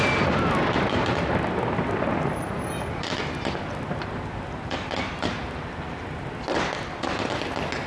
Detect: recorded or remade recorded